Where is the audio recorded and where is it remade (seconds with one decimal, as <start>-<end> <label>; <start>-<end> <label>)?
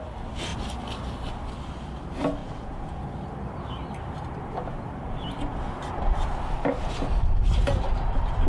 0.0-2.4 recorded; 2.4-3.0 remade; 3.0-8.5 recorded